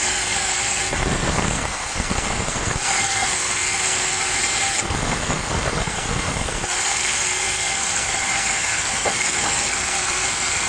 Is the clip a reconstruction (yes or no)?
yes